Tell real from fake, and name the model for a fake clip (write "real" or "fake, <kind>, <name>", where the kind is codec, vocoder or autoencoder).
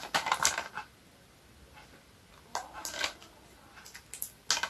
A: real